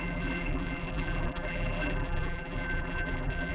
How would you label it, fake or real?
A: fake